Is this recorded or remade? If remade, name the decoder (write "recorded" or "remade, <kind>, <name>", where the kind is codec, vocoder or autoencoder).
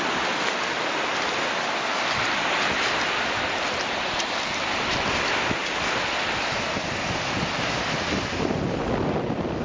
recorded